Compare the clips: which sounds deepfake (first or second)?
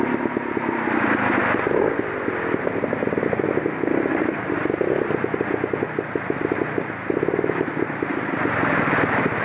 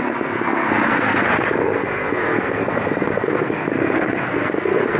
second